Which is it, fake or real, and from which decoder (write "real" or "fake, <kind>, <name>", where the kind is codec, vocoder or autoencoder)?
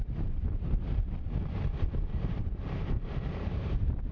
fake, vocoder, BigVGAN v2